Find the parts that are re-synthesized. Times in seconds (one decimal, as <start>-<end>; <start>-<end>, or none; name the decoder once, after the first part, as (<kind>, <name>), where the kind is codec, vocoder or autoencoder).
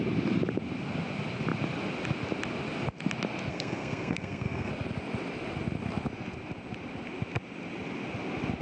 3.5-4.7 (codec, SNAC)